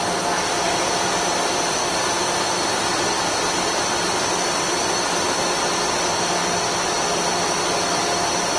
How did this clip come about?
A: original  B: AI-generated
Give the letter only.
A